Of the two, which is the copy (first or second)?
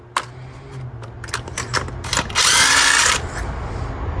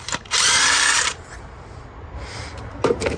second